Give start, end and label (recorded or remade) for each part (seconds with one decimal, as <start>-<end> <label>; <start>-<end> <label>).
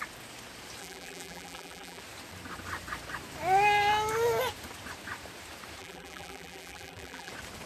0.0-0.8 recorded; 0.8-2.0 remade; 2.0-5.8 recorded; 5.8-7.3 remade; 7.3-7.7 recorded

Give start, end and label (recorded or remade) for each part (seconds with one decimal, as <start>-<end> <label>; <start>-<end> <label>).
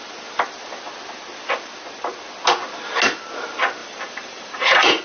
0.0-3.8 recorded; 3.8-5.0 remade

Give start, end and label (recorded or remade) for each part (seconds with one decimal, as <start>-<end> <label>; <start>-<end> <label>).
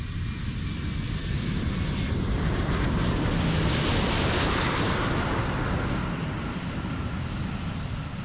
0.0-8.2 recorded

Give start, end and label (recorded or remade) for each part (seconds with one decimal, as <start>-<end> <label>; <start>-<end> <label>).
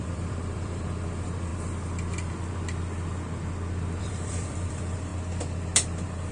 0.0-1.5 remade; 1.5-4.0 recorded; 4.0-5.1 remade; 5.1-6.3 recorded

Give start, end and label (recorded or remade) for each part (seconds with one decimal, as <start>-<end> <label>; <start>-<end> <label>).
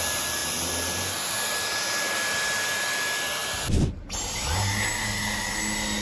0.0-6.0 recorded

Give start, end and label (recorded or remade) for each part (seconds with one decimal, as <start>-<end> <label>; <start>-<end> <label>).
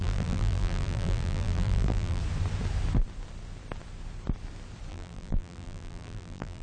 0.0-2.2 remade; 2.2-4.9 recorded; 4.9-6.6 remade